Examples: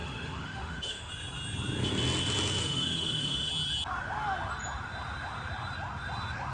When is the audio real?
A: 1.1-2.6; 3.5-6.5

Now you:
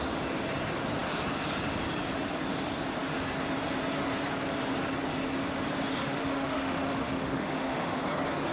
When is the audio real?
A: 0.0-6.0; 8.0-8.5

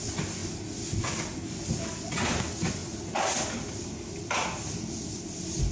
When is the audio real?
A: 0.0-5.7

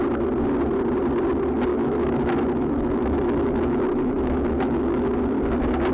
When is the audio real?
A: 0.0-1.7; 5.2-5.9

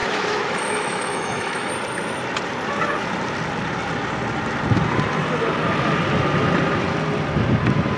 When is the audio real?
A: 1.7-8.0

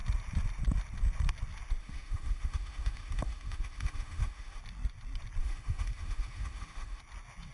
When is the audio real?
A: 0.0-1.8; 4.6-5.4; 7.0-7.5